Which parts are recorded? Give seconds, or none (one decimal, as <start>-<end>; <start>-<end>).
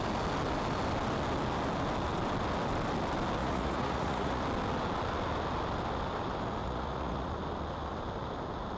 0.0-3.4; 4.4-6.6; 7.3-8.8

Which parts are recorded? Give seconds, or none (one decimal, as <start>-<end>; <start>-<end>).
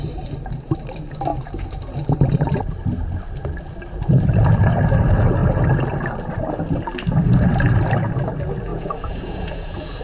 0.0-8.7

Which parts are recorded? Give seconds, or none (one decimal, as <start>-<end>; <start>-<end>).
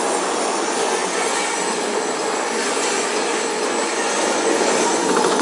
none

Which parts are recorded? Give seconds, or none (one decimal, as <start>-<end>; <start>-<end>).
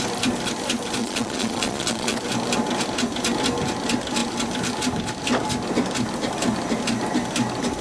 0.0-1.0; 2.2-7.8